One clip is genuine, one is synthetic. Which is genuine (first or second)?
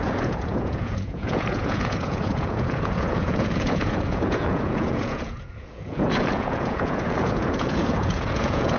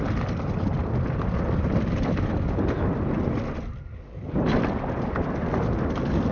second